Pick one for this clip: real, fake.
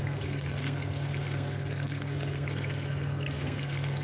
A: fake